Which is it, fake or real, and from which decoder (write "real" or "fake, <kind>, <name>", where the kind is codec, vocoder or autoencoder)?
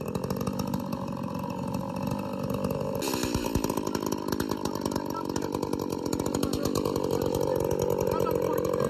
real